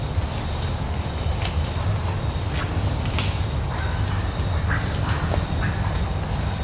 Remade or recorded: recorded